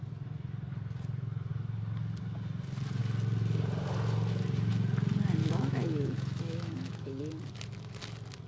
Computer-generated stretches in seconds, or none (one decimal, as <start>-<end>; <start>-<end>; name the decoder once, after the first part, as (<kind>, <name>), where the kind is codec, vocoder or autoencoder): 5.4-7.2 (autoencoder, DAC-VAE)